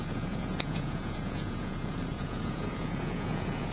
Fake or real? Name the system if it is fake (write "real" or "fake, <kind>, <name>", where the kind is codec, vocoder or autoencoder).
fake, vocoder, Vocos